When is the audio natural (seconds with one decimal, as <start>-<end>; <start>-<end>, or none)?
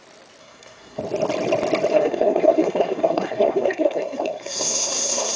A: 0.0-0.4; 1.0-1.9